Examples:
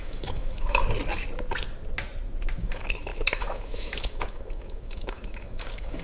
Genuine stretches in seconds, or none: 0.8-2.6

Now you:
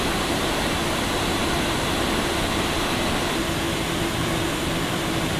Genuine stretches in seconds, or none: 0.0-5.4